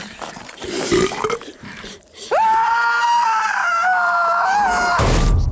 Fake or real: fake